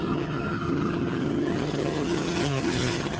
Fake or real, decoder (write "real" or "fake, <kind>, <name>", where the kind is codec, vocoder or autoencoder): fake, vocoder, HiFi-GAN